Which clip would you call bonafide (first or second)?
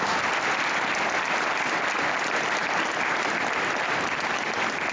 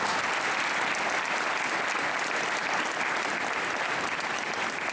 second